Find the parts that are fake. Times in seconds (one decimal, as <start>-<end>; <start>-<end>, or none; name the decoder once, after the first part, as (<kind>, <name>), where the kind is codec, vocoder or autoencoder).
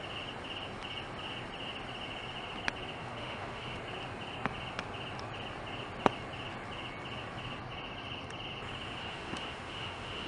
3.0-3.8 (autoencoder, DAC-VAE); 9.0-10.3